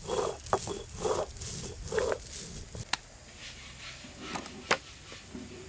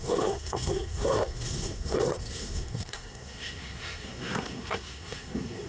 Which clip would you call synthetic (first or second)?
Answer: second